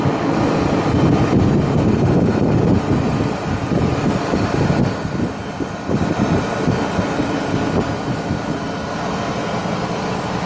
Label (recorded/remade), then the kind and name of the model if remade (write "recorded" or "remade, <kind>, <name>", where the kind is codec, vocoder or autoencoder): recorded